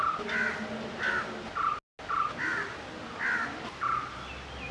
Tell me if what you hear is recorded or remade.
recorded